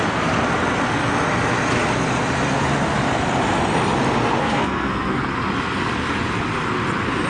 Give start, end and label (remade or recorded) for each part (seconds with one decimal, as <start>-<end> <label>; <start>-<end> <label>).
0.0-4.4 recorded; 4.4-5.2 remade; 5.2-7.3 recorded